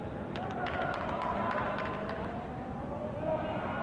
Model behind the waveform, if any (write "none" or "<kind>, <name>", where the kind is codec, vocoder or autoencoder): none